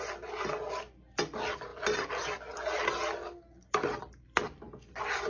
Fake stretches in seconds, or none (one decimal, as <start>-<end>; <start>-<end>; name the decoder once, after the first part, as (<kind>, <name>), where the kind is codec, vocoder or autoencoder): none